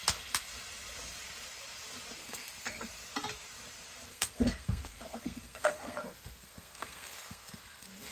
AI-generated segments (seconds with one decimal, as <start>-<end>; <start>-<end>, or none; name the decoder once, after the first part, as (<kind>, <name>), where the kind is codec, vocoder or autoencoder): 2.2-2.9 (codec, SNAC); 4.1-8.1